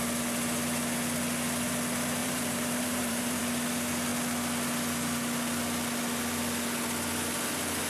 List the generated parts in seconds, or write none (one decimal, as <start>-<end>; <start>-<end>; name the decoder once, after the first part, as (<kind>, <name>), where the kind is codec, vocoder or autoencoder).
2.2-3.4 (vocoder, BigVGAN v2)